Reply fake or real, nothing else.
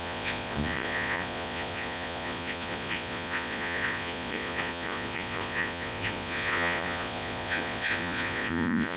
fake